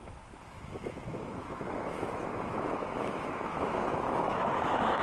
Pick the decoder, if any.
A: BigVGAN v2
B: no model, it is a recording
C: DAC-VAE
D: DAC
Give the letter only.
C